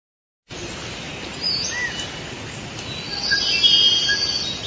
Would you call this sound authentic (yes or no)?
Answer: yes